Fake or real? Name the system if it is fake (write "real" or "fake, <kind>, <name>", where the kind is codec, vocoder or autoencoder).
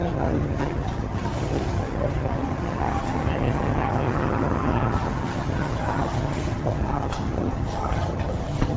fake, vocoder, HiFi-GAN